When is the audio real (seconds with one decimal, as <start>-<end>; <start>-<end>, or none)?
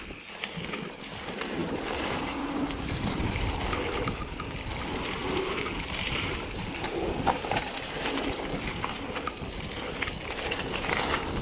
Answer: none